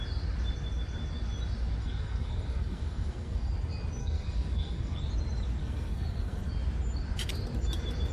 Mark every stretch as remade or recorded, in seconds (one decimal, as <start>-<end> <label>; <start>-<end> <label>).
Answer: 0.0-1.8 recorded; 1.8-3.5 remade; 3.5-4.0 recorded; 4.0-5.0 remade; 5.0-5.6 recorded; 5.6-6.5 remade; 6.5-8.1 recorded